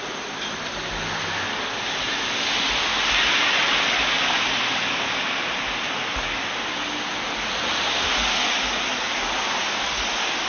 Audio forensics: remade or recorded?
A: recorded